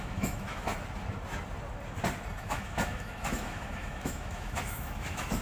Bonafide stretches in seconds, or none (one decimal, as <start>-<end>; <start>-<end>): 0.7-2.4